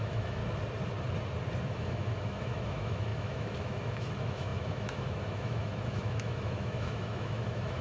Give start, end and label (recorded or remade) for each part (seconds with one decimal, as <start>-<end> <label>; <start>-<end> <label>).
0.0-0.4 remade; 0.4-1.7 recorded; 1.7-7.8 remade